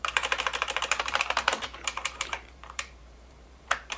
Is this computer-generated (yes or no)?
yes